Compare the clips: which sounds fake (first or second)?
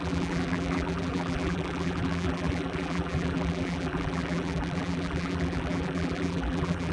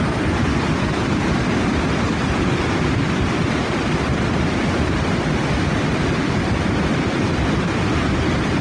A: first